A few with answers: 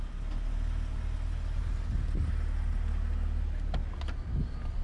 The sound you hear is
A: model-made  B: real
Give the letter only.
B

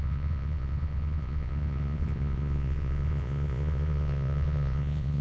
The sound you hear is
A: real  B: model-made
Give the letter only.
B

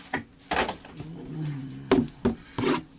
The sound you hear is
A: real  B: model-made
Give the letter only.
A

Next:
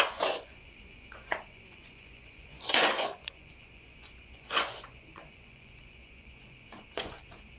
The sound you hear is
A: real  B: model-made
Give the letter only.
B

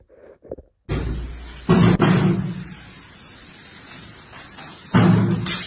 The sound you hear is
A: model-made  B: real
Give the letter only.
B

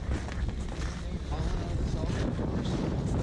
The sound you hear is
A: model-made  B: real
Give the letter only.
B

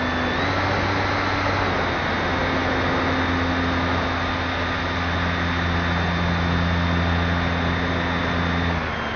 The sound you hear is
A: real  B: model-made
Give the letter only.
A